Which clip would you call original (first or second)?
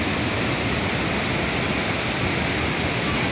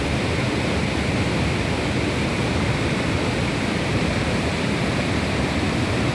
first